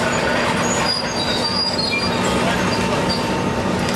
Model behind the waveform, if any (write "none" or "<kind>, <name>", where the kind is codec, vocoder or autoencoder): none